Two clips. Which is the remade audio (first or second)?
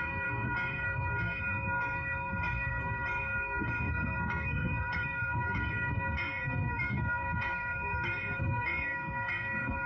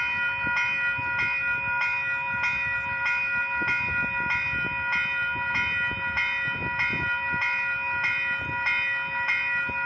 first